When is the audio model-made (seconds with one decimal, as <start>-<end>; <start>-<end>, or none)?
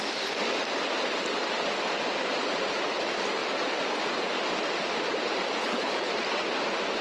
5.6-6.1